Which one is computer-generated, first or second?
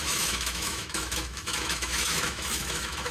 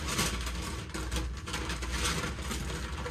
first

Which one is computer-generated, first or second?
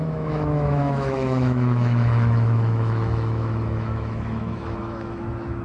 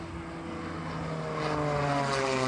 first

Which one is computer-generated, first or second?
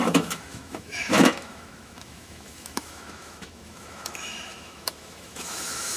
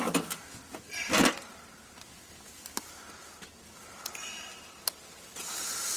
first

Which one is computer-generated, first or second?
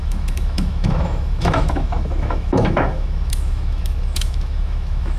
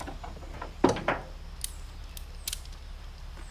first